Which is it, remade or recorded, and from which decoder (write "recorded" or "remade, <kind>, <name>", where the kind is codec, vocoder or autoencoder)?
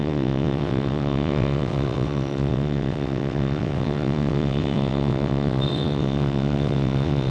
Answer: remade, vocoder, WaveNeXt